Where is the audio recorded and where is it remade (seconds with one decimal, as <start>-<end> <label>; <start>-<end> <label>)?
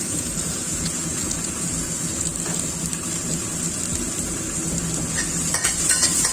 0.0-2.3 remade; 2.3-5.0 recorded; 5.0-6.3 remade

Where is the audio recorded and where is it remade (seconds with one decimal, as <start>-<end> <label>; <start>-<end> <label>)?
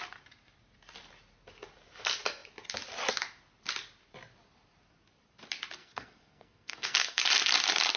0.0-5.8 recorded; 5.8-7.2 remade; 7.2-8.0 recorded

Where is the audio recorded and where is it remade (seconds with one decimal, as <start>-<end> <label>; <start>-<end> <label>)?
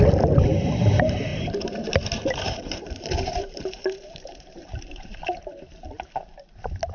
0.0-1.3 recorded; 1.3-5.4 remade; 5.4-6.9 recorded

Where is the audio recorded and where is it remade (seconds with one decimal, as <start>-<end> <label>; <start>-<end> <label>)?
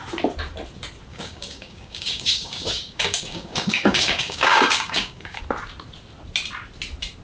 0.0-1.1 recorded; 1.1-5.4 remade; 5.4-7.2 recorded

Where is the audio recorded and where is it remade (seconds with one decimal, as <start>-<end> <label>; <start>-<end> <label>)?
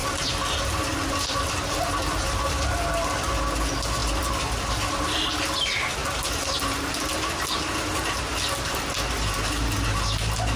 0.0-1.6 remade; 1.6-2.0 recorded; 2.0-2.7 remade; 2.7-4.0 recorded; 4.0-5.3 remade; 5.3-6.0 recorded; 6.0-7.0 remade; 7.0-10.6 recorded